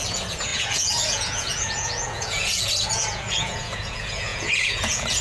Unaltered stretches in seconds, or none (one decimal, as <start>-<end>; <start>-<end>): none